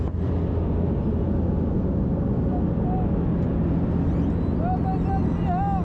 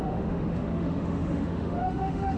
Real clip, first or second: first